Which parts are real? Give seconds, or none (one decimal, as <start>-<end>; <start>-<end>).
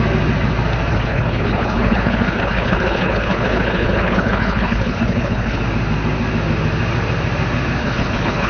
0.0-0.9; 5.6-7.8